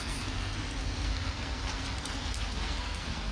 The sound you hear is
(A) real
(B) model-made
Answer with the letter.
B